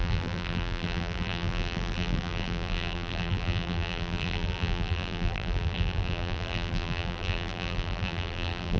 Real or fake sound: fake